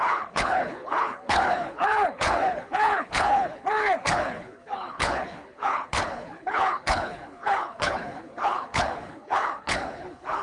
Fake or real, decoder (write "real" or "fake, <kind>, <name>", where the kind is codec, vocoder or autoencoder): fake, codec, HILCodec